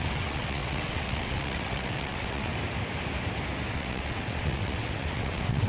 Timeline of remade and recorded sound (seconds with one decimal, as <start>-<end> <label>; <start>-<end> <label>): 0.0-2.5 remade; 2.5-3.7 recorded; 3.7-5.7 remade